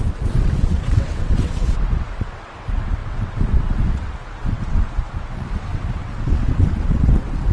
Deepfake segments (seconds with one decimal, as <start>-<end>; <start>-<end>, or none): 0.0-7.5